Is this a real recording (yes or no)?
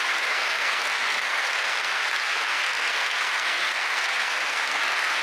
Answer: no